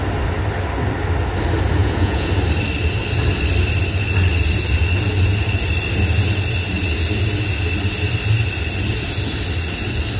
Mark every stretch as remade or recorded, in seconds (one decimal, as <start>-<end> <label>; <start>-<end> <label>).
0.0-1.8 recorded; 1.8-2.3 remade; 2.3-10.2 recorded